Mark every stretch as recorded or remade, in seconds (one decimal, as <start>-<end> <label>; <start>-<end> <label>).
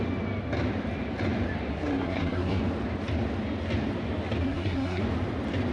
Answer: 0.0-1.7 recorded; 1.7-2.6 remade; 2.6-4.4 recorded; 4.4-5.0 remade; 5.0-5.7 recorded